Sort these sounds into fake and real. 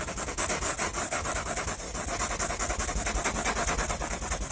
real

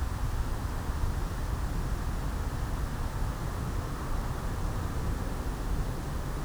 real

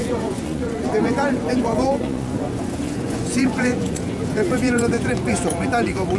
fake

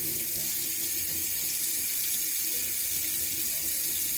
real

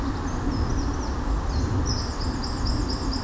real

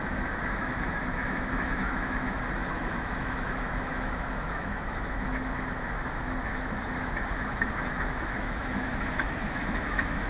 fake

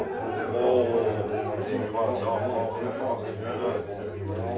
real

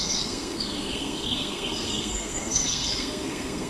fake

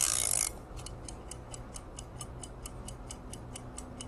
real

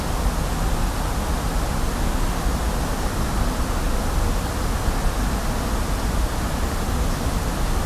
real